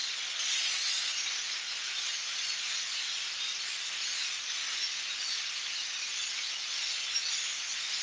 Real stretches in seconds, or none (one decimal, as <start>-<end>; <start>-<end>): 0.0-8.0